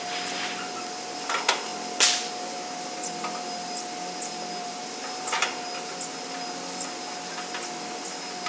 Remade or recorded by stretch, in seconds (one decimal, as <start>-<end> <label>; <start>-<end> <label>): 0.0-8.5 recorded